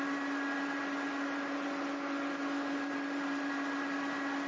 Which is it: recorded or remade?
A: recorded